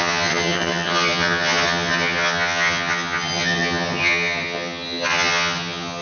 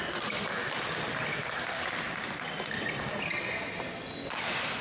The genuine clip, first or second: second